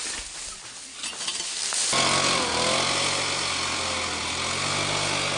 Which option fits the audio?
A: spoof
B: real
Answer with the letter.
B